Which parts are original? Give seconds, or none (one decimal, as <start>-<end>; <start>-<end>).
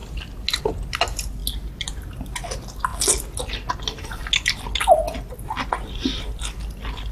0.0-7.1